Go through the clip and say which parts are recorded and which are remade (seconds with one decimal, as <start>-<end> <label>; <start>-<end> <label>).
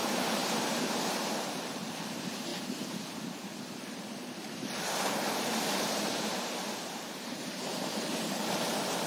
0.0-2.5 remade; 2.5-3.6 recorded; 3.6-9.1 remade